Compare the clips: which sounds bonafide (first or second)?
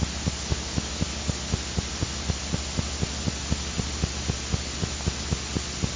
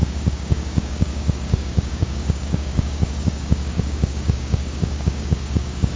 first